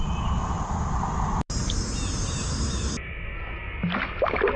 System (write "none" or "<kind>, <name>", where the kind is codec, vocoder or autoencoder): none